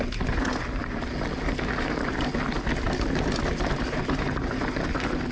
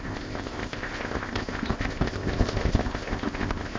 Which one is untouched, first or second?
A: first